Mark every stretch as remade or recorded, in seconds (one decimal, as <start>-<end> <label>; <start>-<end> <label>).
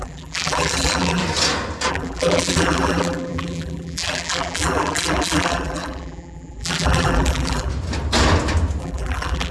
0.0-1.2 remade; 1.2-1.9 recorded; 1.9-7.7 remade; 7.7-8.8 recorded; 8.8-9.5 remade